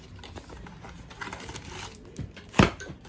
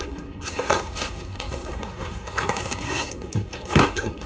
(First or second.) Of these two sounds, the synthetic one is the second